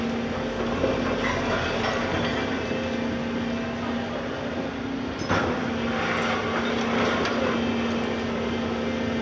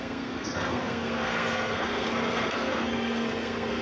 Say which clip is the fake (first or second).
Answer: second